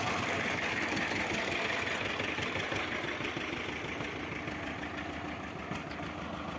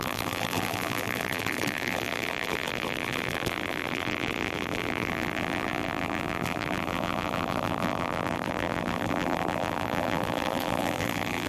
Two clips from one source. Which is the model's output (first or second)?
second